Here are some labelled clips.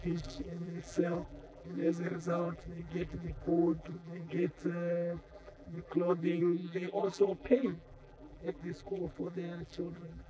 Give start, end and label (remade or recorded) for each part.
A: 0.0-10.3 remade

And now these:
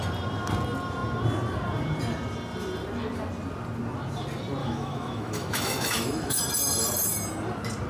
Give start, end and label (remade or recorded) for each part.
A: 0.0-4.6 recorded; 4.6-6.4 remade; 6.4-7.9 recorded

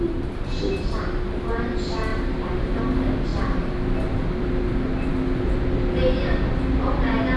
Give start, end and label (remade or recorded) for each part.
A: 0.0-2.1 recorded; 2.1-2.8 remade; 2.8-7.4 recorded